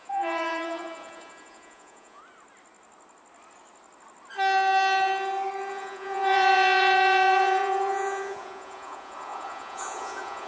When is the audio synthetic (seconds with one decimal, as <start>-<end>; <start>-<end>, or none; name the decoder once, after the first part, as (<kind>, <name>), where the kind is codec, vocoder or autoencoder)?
0.0-2.2 (vocoder, Vocos); 5.7-10.5